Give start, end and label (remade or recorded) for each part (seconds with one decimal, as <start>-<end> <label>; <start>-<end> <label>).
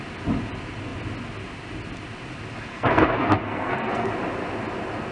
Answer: 0.0-2.7 recorded; 2.7-4.1 remade; 4.1-5.1 recorded